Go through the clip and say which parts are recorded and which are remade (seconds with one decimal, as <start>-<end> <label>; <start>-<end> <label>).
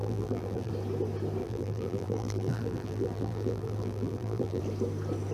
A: 0.0-0.7 remade; 0.7-1.4 recorded; 1.4-4.6 remade; 4.6-5.3 recorded